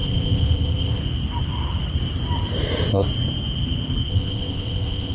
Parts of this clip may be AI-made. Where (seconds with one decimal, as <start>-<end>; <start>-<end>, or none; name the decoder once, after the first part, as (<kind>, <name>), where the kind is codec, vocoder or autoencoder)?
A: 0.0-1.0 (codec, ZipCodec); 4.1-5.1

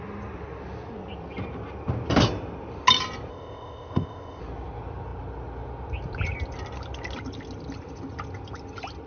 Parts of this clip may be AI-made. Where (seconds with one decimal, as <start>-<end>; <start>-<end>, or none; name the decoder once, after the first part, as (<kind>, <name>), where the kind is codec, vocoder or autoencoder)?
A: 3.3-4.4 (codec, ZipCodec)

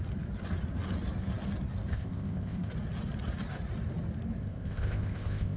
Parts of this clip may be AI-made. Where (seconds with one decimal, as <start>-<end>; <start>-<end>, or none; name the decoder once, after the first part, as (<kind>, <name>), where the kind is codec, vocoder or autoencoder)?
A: 1.9-2.7 (codec, ZipCodec); 4.4-5.6

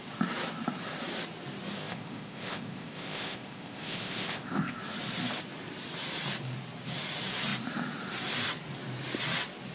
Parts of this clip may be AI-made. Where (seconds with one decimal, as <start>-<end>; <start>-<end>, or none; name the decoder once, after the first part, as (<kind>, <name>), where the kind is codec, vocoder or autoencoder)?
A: 1.8-4.8 (codec, ZipCodec)